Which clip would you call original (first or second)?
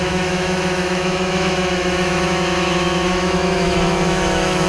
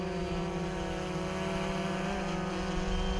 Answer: second